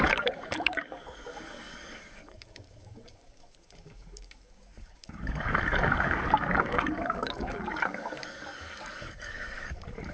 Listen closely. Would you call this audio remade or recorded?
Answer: remade